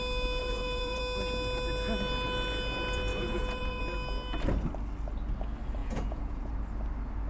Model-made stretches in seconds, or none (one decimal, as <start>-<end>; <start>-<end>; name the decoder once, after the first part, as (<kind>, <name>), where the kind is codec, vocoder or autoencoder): 0.4-1.0 (vocoder, Vocos); 3.1-3.8; 5.8-6.5